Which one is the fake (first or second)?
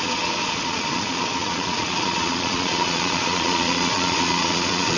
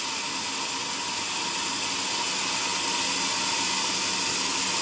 first